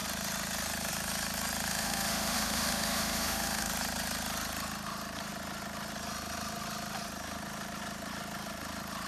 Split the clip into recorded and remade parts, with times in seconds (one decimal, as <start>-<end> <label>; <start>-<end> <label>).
0.0-1.7 recorded; 1.7-3.7 remade; 3.7-9.1 recorded